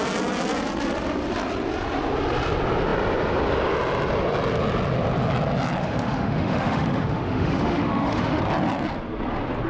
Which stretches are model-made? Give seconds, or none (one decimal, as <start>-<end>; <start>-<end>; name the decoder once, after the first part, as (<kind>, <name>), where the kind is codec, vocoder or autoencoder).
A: 5.8-8.4 (autoencoder, DAC-VAE)